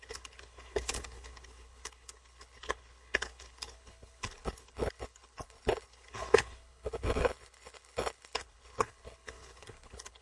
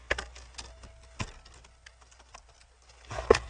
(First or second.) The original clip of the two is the second